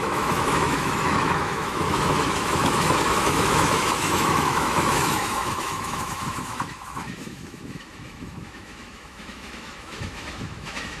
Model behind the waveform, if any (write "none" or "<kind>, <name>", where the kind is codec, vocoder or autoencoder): autoencoder, DAC-VAE